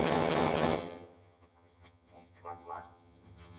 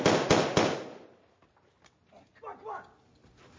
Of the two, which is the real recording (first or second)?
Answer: second